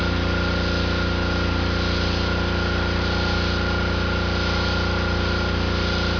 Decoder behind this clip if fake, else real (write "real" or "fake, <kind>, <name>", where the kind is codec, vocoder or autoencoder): real